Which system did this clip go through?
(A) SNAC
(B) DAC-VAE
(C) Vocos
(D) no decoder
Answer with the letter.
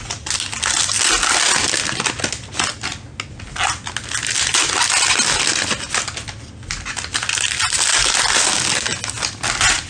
D